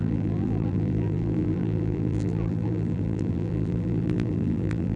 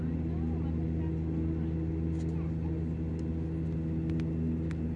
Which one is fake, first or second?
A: first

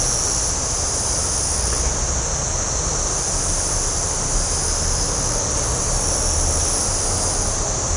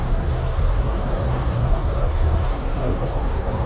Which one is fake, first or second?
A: second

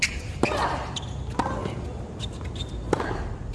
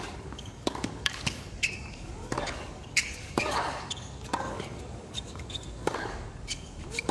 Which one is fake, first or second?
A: second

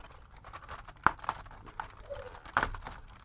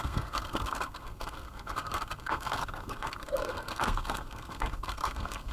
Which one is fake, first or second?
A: second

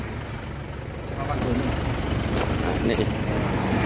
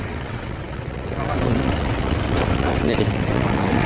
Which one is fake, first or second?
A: second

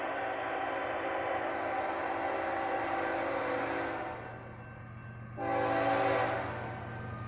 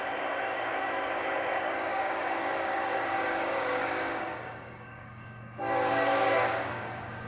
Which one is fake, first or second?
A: second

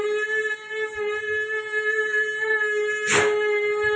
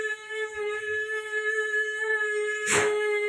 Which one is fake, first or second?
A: second